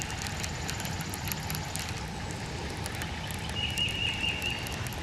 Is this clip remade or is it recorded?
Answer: recorded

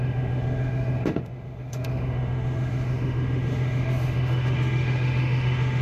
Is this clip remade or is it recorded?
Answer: remade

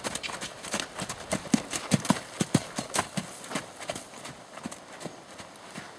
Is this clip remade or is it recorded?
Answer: recorded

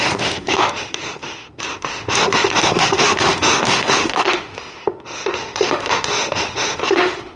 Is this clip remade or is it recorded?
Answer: remade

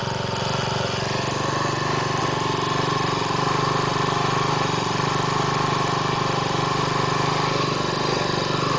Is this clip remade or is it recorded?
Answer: recorded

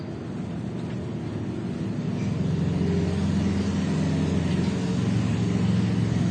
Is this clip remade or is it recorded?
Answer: recorded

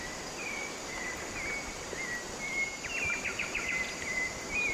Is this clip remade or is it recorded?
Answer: recorded